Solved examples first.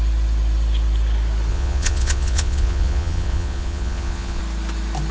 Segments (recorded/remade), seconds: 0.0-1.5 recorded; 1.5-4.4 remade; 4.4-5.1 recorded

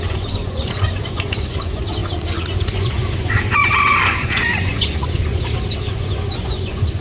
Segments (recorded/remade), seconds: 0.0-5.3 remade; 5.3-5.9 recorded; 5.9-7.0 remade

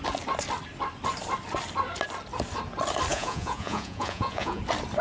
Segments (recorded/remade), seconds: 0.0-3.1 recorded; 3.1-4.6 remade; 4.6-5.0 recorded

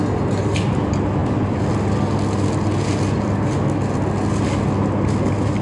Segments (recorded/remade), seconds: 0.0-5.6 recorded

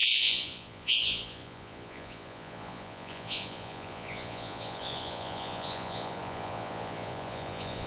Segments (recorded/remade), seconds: 0.0-7.9 remade

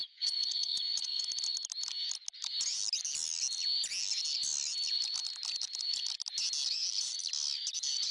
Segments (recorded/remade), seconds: 0.0-1.2 remade; 1.2-8.1 recorded

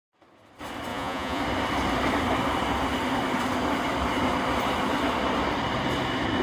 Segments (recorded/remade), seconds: 0.0-0.9 recorded; 0.9-1.4 remade; 1.4-6.4 recorded

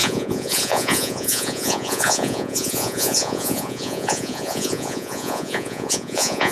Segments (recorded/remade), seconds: 0.0-6.5 remade